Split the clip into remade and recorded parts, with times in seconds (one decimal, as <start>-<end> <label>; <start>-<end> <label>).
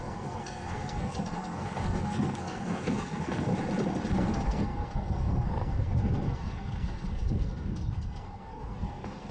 0.0-3.5 remade; 3.5-4.1 recorded; 4.1-9.3 remade